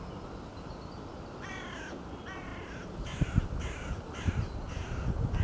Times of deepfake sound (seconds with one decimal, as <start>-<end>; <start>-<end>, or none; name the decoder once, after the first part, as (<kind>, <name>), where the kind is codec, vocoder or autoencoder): none